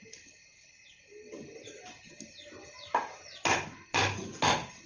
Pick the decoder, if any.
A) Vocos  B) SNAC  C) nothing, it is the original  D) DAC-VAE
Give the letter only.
C